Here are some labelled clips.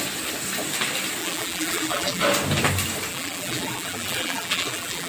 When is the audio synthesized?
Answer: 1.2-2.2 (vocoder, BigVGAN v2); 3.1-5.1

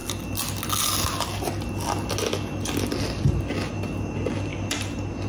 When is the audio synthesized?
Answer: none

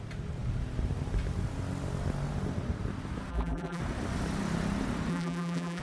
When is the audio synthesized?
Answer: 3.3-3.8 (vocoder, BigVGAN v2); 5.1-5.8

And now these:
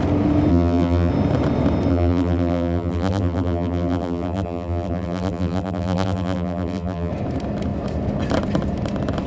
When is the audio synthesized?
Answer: 0.5-1.1 (vocoder, BigVGAN v2); 1.9-7.1

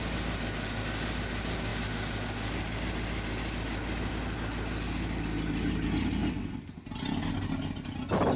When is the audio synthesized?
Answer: none

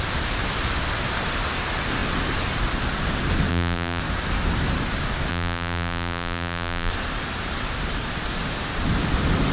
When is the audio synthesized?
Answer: 3.5-4.0 (vocoder, BigVGAN v2); 5.3-6.9

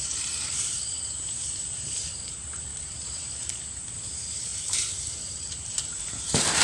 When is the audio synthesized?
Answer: 0.0-4.5 (vocoder, BigVGAN v2); 5.2-6.6